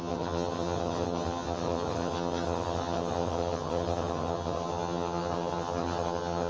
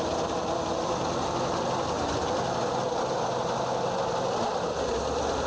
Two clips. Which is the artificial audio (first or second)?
first